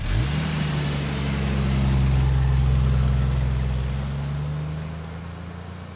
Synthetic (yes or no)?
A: no